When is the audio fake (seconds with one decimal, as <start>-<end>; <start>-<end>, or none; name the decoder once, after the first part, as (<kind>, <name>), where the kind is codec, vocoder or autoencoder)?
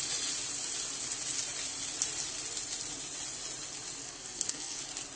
4.0-4.8 (codec, SNAC)